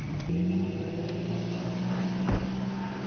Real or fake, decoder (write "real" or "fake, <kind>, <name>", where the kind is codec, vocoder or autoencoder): real